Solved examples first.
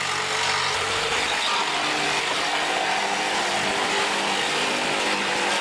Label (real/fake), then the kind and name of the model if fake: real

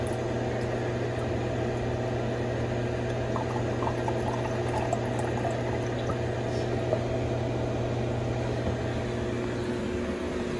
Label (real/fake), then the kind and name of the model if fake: real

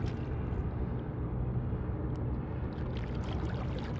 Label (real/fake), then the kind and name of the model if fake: real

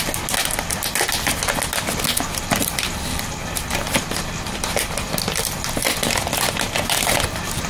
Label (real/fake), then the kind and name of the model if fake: real